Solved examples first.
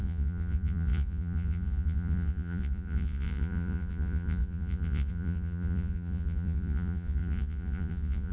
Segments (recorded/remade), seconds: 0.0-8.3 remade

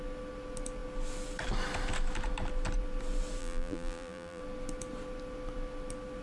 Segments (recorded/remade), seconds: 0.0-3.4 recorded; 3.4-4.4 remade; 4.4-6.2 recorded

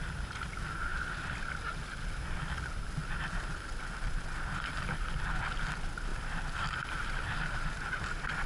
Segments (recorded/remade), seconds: 0.0-0.9 recorded; 0.9-1.5 remade; 1.5-3.0 recorded; 3.0-5.4 remade; 5.4-6.1 recorded; 6.1-7.4 remade; 7.4-8.5 recorded